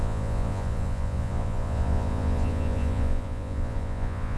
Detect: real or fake fake